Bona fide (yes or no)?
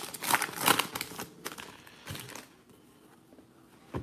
yes